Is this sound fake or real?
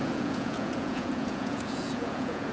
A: fake